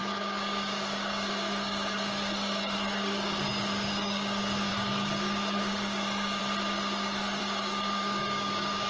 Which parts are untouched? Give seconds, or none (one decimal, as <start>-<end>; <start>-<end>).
6.4-7.4